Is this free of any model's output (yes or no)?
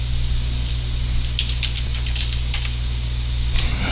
yes